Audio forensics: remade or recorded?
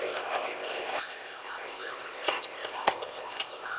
remade